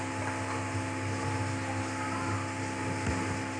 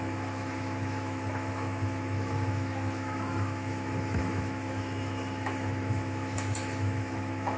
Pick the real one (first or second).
first